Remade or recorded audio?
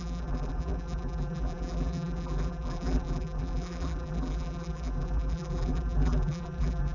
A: remade